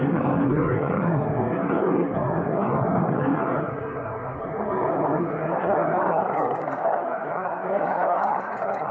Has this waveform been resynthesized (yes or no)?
yes